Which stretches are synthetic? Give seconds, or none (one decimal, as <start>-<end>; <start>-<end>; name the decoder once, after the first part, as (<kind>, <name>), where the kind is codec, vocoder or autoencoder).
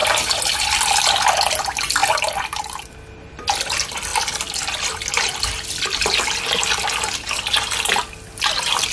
2.0-3.0 (vocoder, BigVGAN v2)